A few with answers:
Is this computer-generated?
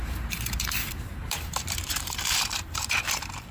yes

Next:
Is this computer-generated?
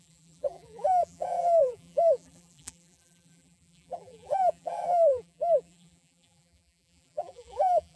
yes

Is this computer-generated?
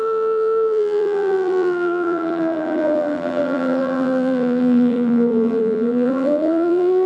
yes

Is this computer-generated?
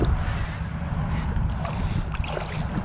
no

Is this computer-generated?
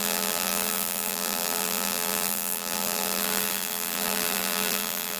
yes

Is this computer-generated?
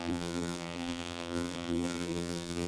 yes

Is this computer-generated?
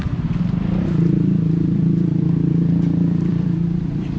yes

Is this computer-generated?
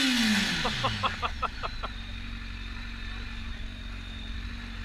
no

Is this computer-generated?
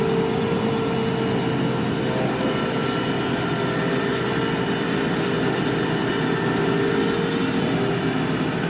no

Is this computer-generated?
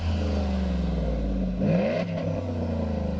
no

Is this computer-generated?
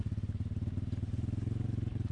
no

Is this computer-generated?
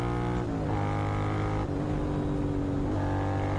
no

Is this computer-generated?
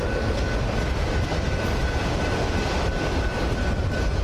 no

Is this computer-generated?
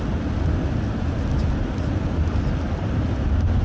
no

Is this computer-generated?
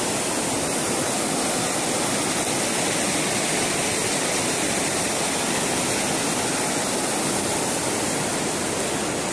no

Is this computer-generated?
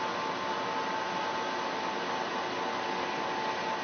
no